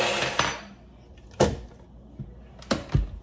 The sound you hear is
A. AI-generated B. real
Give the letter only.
B